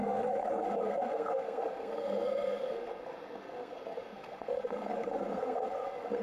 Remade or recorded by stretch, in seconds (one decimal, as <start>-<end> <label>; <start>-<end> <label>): 0.0-6.2 remade